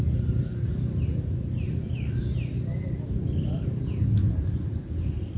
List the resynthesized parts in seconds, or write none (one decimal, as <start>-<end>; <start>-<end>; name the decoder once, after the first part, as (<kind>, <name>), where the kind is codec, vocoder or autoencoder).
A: none